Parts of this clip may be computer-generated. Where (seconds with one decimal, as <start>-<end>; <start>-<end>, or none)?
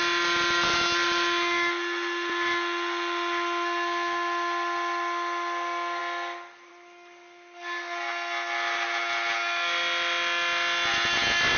none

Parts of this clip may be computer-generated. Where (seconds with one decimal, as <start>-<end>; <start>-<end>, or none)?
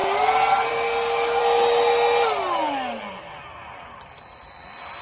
none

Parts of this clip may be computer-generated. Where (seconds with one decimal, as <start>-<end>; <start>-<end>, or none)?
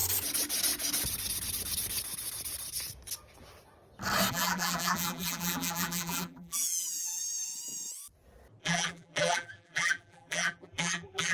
4.3-7.2; 8.6-11.3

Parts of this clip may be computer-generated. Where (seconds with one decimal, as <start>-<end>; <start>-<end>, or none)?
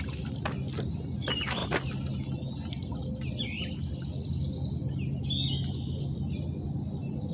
none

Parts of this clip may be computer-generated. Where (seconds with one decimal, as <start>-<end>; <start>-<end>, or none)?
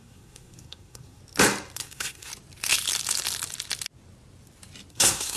0.0-1.2; 1.8-2.3; 4.9-5.4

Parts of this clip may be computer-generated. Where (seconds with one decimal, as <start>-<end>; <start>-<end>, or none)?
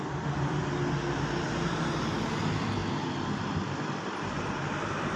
0.0-0.6; 2.4-2.8; 3.4-5.2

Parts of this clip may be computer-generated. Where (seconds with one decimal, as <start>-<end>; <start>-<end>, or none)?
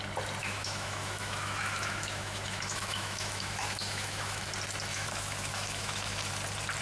0.4-4.5; 4.9-6.3